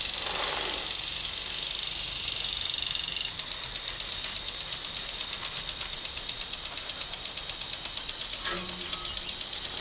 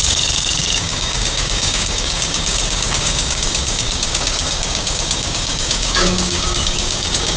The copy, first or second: second